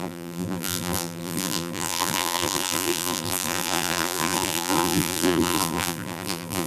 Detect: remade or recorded remade